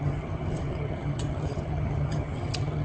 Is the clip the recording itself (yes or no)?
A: no